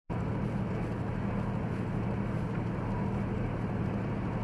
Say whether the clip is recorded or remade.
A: recorded